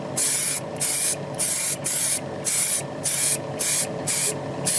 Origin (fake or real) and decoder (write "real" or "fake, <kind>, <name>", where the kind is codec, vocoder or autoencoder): real